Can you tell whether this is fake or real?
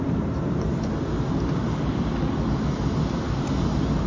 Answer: fake